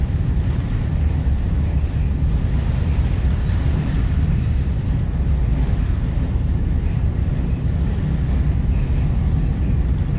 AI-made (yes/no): no